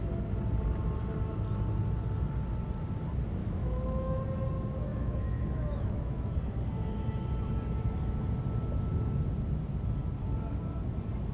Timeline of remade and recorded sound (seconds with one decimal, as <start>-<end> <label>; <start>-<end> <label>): 0.0-3.4 recorded; 3.4-4.2 remade; 4.2-4.9 recorded; 4.9-6.3 remade; 6.3-11.3 recorded